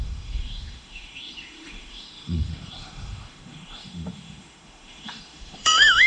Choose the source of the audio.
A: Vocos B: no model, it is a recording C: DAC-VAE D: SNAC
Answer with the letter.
C